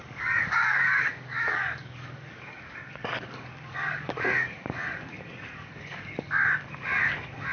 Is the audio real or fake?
fake